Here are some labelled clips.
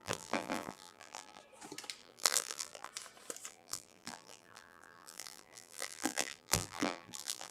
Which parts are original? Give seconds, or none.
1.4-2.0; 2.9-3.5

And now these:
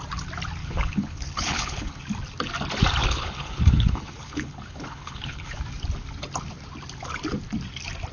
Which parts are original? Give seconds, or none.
0.0-0.6; 2.0-3.0; 5.6-8.1